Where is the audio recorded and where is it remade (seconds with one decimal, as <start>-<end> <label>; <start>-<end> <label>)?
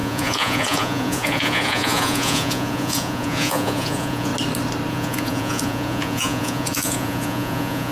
0.0-4.3 remade; 4.3-4.9 recorded; 4.9-7.9 remade